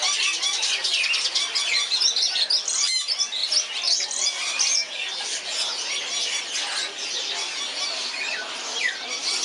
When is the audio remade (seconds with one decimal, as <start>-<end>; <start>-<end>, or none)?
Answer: none